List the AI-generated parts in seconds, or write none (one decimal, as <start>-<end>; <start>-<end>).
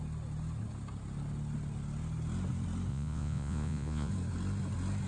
2.9-4.1